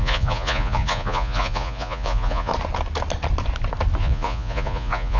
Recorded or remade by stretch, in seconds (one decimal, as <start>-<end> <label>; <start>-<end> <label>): 0.0-2.5 remade; 2.5-4.0 recorded; 4.0-5.2 remade

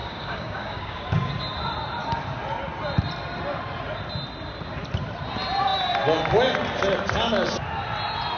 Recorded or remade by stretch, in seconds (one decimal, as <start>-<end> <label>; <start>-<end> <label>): 0.0-1.3 remade; 1.3-8.4 recorded

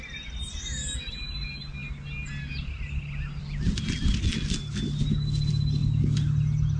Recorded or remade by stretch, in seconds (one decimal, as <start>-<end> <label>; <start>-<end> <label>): 0.0-6.8 recorded

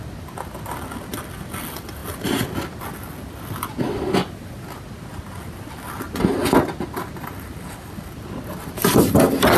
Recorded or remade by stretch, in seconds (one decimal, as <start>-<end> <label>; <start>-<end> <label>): 0.0-9.6 recorded

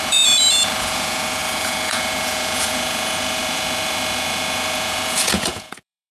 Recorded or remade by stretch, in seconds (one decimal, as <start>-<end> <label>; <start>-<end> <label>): 0.0-6.1 remade

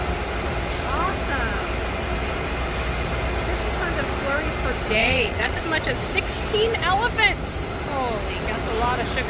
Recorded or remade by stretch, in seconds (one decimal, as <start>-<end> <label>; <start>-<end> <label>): 0.0-5.0 recorded; 5.0-5.6 remade; 5.6-9.3 recorded

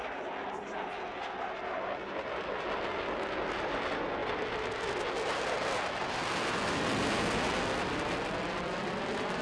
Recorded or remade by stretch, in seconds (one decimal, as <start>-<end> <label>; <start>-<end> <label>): 0.0-9.4 recorded